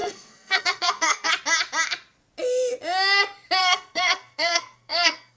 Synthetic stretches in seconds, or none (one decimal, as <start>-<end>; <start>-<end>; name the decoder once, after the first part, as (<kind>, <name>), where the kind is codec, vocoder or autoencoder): 0.0-1.3 (codec, SNAC); 3.6-5.4